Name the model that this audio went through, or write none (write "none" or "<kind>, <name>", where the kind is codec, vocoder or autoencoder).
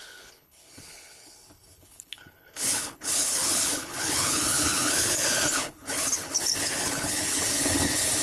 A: codec, HILCodec